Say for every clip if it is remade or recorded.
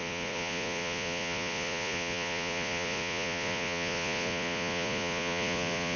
remade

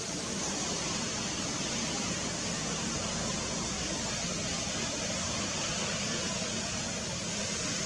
recorded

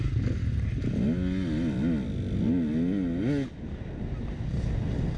recorded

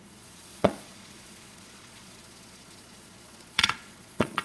remade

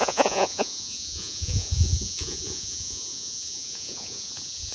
remade